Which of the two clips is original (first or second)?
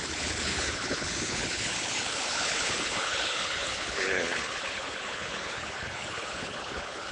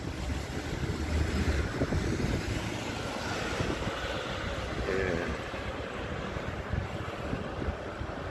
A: second